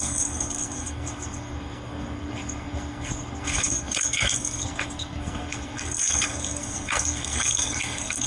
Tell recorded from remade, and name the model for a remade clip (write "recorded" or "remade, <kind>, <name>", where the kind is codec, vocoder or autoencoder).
remade, codec, SNAC